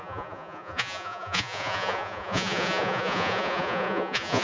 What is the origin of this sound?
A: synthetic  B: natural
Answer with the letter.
A